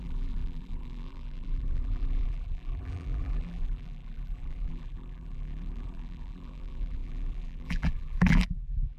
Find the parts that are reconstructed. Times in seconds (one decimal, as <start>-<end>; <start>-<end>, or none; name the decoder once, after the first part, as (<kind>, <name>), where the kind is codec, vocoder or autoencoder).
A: 0.0-9.0 (vocoder, BigVGAN v2)